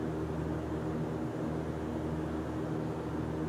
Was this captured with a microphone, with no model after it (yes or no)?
yes